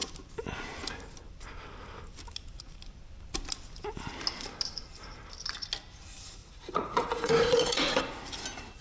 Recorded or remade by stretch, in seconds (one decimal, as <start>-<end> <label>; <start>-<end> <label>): 0.0-6.4 recorded; 6.4-8.0 remade; 8.0-8.8 recorded